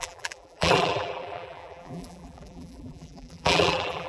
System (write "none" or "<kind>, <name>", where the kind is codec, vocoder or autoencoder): vocoder, BigVGAN v2